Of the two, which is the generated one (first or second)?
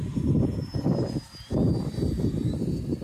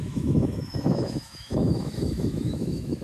second